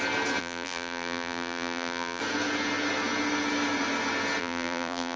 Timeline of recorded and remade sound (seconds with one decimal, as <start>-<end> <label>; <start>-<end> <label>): 0.0-0.4 recorded; 0.4-2.2 remade; 2.2-4.4 recorded; 4.4-5.2 remade